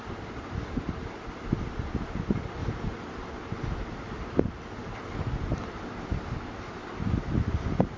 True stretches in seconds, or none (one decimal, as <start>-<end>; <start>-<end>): 0.0-8.0